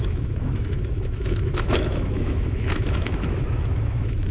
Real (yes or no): no